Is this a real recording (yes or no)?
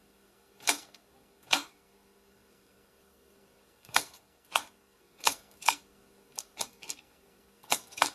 no